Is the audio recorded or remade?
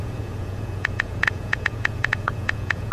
remade